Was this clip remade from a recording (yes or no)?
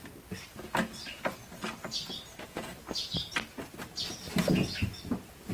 no